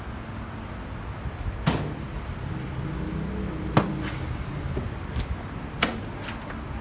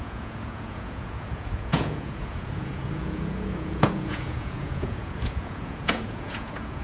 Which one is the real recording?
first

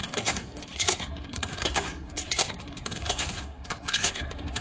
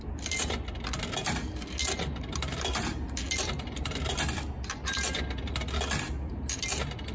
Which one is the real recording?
second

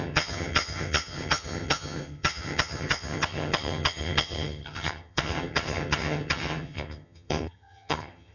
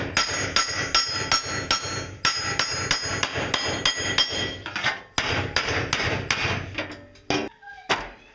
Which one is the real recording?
second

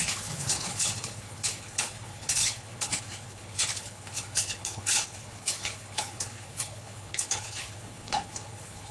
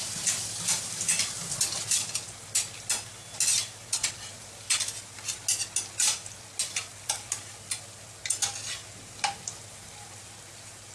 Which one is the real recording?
second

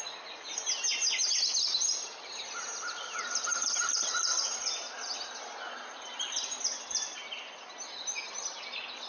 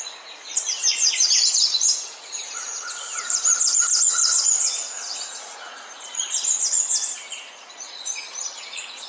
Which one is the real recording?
first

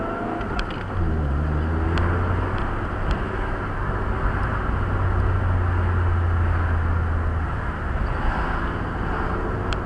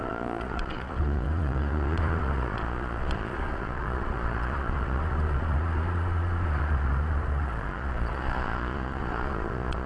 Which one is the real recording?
first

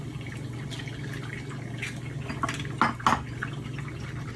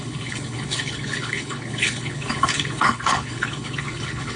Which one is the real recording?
first